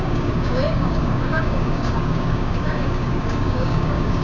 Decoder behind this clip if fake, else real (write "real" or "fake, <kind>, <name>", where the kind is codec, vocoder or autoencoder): fake, codec, DAC